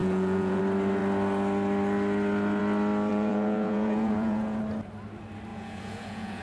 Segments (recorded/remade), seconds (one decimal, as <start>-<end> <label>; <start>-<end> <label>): 0.0-0.6 remade; 0.6-3.1 recorded; 3.1-4.6 remade; 4.6-5.5 recorded; 5.5-6.4 remade